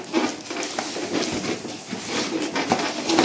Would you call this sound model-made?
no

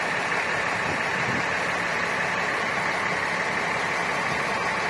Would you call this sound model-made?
no